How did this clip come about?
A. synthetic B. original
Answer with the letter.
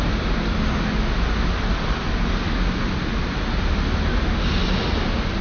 B